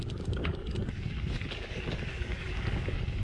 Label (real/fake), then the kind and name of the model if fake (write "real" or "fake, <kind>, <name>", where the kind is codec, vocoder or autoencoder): fake, codec, DAC